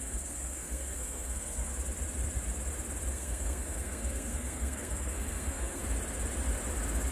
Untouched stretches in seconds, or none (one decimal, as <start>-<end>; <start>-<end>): 1.7-3.1; 5.8-7.1